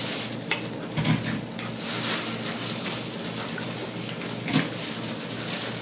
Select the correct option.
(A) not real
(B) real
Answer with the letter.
B